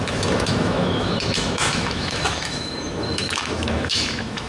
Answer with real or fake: fake